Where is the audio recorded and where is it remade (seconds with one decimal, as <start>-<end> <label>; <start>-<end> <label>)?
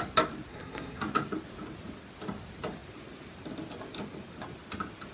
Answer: 0.0-0.5 recorded; 0.5-1.0 remade; 1.0-5.1 recorded